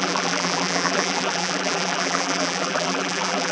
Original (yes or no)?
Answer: no